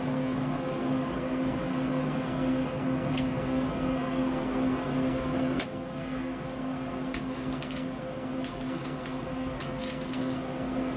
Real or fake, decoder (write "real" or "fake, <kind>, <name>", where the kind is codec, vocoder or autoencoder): fake, codec, SNAC